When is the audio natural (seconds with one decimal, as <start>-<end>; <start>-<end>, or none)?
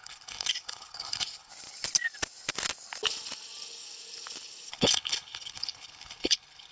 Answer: 1.5-4.7